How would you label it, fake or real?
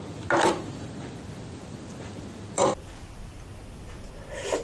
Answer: real